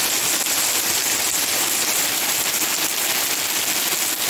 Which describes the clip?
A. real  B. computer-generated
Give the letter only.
A